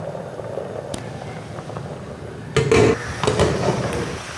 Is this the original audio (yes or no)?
yes